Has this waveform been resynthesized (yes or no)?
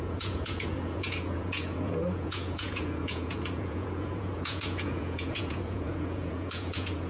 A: yes